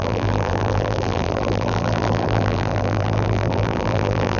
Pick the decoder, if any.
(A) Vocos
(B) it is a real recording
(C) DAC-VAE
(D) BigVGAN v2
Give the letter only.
D